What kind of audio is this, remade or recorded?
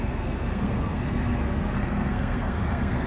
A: remade